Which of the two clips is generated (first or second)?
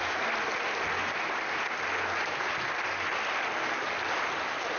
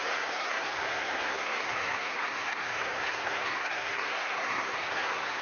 second